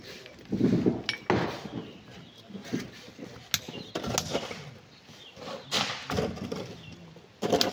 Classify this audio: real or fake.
real